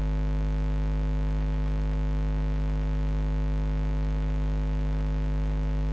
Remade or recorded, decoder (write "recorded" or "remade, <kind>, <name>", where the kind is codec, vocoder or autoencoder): recorded